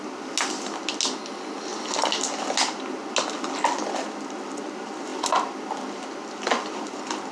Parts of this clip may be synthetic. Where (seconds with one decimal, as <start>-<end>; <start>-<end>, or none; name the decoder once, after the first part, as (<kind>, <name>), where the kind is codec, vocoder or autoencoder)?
none